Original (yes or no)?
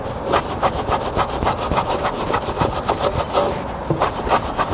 yes